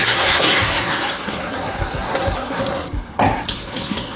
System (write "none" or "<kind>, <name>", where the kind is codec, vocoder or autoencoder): codec, SNAC